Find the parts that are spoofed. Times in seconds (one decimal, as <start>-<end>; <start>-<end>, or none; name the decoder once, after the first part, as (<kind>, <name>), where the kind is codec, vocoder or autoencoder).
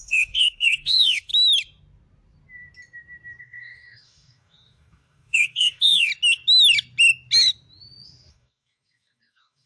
0.0-1.3 (codec, DAC); 3.4-6.1; 8.3-9.7